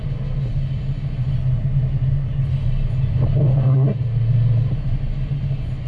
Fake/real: real